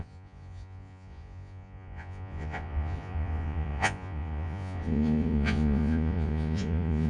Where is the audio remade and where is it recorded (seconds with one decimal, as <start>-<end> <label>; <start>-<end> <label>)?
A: 0.0-7.1 remade